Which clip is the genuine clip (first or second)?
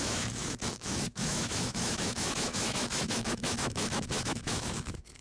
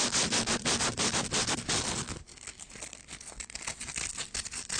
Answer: second